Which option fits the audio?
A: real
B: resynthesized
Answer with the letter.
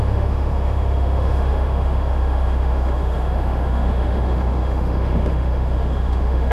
B